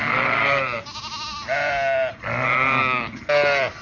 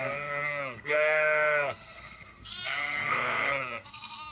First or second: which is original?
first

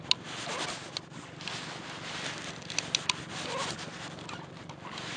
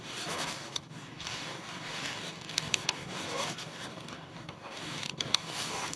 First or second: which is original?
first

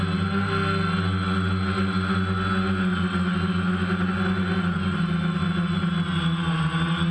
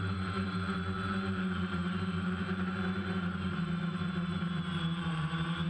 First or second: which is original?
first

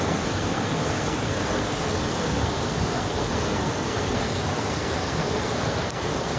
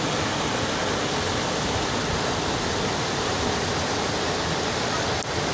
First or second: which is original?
second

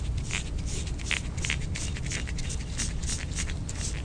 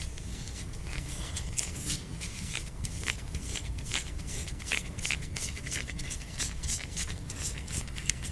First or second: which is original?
first